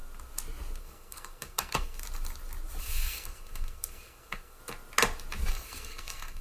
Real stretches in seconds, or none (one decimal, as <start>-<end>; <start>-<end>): 0.0-0.8; 2.0-2.8; 4.6-5.5